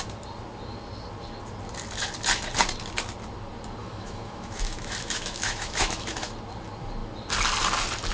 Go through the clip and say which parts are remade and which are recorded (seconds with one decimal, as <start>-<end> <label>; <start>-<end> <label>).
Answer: 0.0-3.8 recorded; 3.8-6.3 remade; 6.3-8.1 recorded